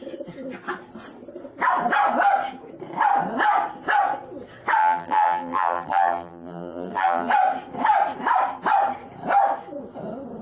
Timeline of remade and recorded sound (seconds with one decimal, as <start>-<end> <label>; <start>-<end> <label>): 0.0-4.8 recorded; 4.8-7.3 remade; 7.3-10.4 recorded